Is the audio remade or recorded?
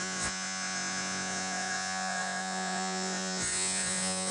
remade